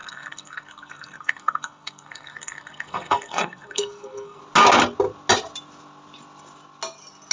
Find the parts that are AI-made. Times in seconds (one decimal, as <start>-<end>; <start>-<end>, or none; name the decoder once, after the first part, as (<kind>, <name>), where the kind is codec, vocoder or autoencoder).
0.0-4.4 (codec, SNAC)